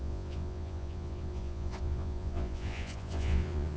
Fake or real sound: fake